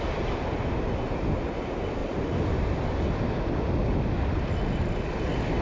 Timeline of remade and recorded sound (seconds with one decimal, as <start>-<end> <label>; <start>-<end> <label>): 0.0-5.6 recorded